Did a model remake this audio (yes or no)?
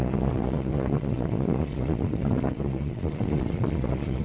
yes